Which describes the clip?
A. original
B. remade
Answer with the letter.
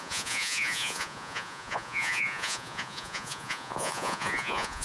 B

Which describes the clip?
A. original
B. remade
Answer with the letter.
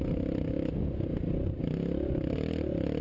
A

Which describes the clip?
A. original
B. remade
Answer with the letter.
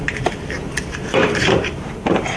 B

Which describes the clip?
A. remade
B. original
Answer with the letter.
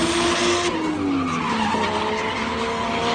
B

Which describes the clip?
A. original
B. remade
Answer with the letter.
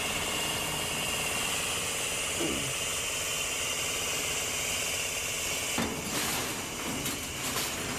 A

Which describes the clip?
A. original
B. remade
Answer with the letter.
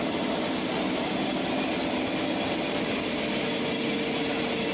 A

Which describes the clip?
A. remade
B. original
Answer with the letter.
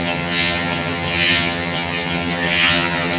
A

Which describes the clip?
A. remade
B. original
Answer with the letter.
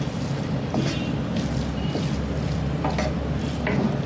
B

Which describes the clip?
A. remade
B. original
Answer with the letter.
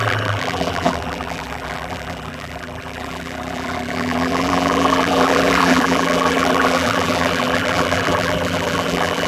A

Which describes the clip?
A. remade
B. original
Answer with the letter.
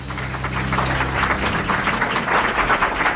B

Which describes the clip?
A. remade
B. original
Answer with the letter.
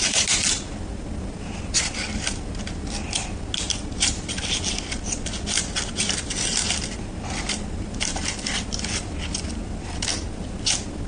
B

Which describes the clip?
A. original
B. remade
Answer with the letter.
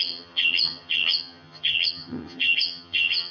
B